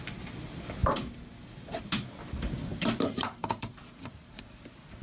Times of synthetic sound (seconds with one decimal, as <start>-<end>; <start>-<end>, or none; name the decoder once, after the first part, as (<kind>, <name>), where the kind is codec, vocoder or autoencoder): 2.7-4.4 (vocoder, BigVGAN v2)